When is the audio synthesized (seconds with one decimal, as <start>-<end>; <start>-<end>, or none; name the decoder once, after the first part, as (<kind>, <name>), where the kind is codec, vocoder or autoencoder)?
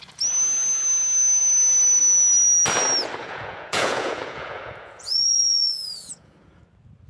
3.2-6.6 (vocoder, Vocos)